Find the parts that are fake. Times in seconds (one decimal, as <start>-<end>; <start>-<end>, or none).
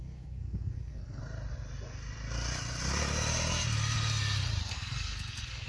0.0-1.2; 4.6-5.7